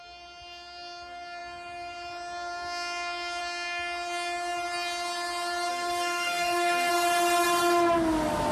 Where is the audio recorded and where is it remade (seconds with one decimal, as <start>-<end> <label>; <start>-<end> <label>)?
0.0-5.7 recorded; 5.7-6.9 remade; 6.9-8.5 recorded